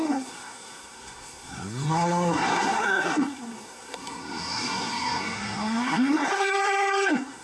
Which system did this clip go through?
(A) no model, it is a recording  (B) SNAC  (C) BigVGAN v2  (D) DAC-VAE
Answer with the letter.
B